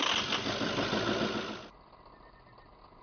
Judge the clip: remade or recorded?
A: recorded